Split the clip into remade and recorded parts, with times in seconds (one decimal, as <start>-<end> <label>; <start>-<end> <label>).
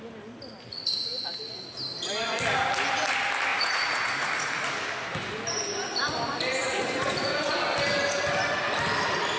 0.0-3.5 recorded; 3.5-4.3 remade; 4.3-6.6 recorded; 6.6-7.5 remade; 7.5-9.4 recorded